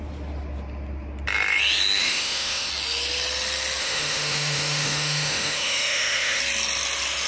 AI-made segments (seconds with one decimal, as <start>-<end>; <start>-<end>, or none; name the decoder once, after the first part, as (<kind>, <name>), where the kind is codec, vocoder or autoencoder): 2.0-2.7 (autoencoder, DAC-VAE); 3.8-6.4